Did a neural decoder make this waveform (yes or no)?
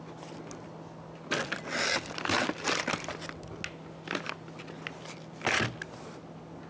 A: no